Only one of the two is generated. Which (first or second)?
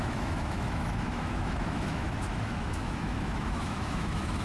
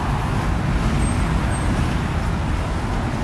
first